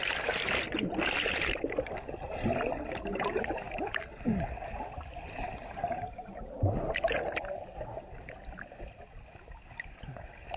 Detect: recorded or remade recorded